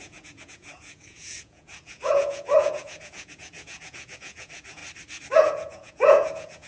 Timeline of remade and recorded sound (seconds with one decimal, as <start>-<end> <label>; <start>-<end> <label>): 0.0-4.8 remade; 4.8-5.3 recorded; 5.3-6.7 remade